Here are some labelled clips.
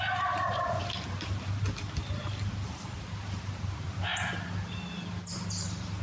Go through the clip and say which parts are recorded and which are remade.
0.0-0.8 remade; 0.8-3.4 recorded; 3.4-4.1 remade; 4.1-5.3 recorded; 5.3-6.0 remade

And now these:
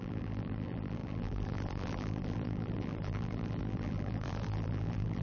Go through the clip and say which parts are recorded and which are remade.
0.0-5.2 remade

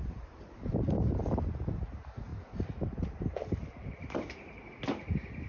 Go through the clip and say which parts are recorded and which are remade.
0.0-1.2 remade; 1.2-2.3 recorded; 2.3-4.7 remade; 4.7-5.5 recorded

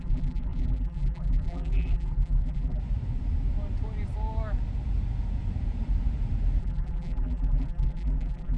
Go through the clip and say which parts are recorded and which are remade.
0.0-2.8 remade; 2.8-6.6 recorded; 6.6-8.6 remade